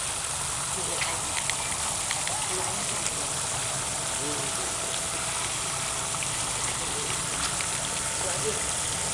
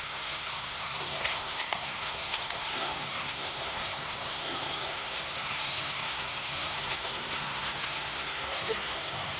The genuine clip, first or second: first